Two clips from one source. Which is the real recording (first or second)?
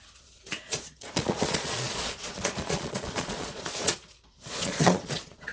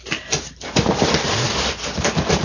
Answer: second